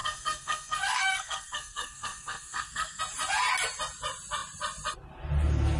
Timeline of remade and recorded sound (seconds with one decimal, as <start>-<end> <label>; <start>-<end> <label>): 0.0-3.0 remade; 3.0-5.8 recorded